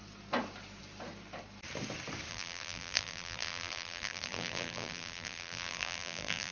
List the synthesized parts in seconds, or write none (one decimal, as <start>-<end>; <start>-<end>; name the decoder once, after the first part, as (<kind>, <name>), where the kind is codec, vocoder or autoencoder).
2.3-6.5 (vocoder, BigVGAN v2)